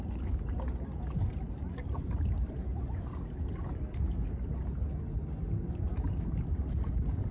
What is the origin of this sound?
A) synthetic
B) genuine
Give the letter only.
B